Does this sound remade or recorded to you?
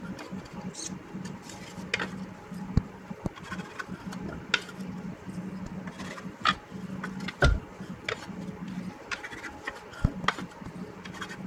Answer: recorded